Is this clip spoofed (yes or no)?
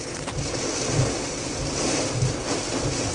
no